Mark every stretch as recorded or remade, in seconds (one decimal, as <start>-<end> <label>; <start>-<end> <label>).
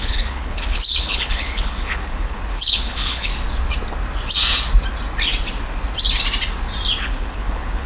0.0-3.3 remade; 3.3-7.0 recorded; 7.0-7.9 remade